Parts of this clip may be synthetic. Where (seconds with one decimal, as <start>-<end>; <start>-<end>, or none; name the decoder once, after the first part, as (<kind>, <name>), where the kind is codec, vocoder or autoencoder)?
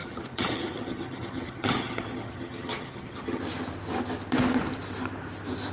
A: 0.0-3.4 (vocoder, HiFi-GAN)